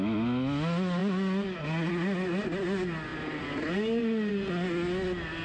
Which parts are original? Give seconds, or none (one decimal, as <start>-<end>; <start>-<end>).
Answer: 0.0-5.4